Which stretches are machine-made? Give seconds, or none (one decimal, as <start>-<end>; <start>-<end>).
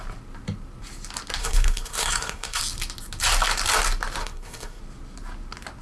1.4-2.6; 4.2-4.8